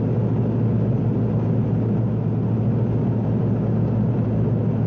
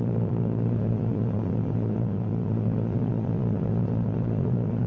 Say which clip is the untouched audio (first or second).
first